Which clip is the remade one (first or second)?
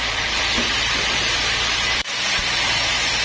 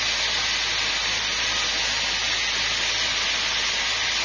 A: first